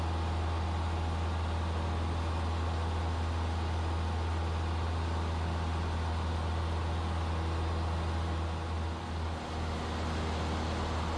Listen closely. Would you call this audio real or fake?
real